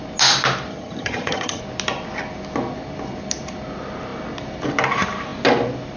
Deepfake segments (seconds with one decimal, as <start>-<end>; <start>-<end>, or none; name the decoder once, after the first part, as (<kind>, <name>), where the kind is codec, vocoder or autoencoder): 0.7-1.6 (vocoder, HiFi-GAN)